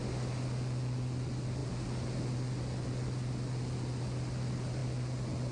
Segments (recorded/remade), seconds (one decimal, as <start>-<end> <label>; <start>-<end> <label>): 0.0-5.5 recorded